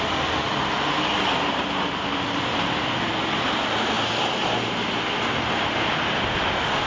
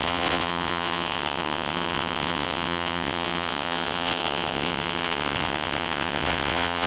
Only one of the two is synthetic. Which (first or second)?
second